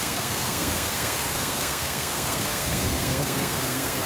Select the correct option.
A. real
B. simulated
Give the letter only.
B